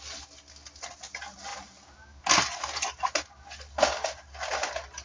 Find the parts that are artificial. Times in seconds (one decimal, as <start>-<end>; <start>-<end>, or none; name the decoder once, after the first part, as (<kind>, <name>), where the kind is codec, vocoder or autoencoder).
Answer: none